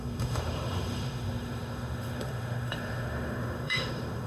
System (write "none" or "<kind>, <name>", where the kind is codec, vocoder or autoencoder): autoencoder, DAC-VAE